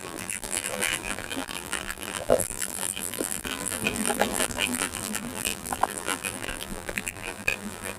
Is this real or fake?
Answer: fake